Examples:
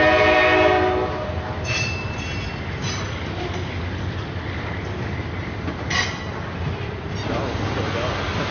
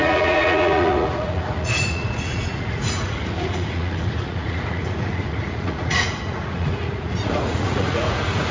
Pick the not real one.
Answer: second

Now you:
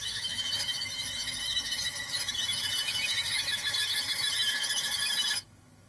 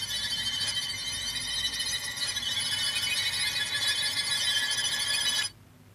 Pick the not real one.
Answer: first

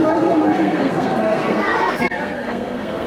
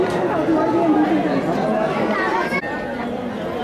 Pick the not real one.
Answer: first